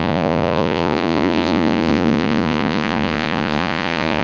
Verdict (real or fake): fake